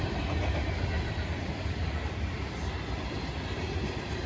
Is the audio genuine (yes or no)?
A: yes